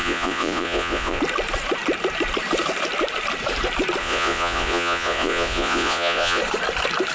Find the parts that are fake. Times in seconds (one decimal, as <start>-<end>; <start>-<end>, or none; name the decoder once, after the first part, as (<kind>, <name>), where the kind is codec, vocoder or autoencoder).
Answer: 0.0-1.2 (vocoder, Vocos); 4.0-6.4